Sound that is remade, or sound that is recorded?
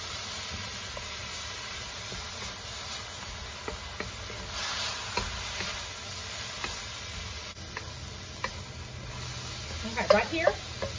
recorded